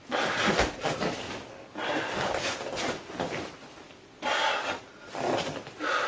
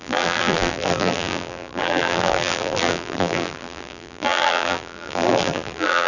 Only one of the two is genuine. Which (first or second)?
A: first